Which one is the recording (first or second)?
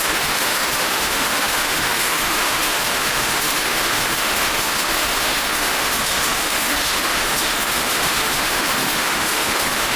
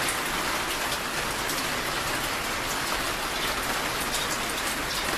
second